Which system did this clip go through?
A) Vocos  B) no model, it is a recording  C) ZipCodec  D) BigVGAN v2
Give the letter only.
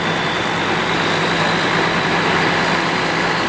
B